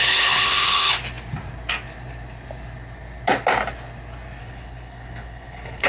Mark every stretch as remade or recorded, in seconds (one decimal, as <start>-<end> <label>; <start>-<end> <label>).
0.0-0.9 remade; 0.9-4.4 recorded; 4.4-5.9 remade